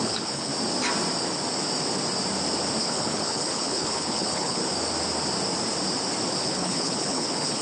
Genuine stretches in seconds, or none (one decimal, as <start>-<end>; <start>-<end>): 0.5-2.8; 4.6-6.4